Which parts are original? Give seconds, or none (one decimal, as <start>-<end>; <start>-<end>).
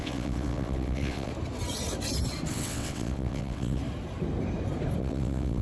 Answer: 1.3-2.5; 3.8-5.0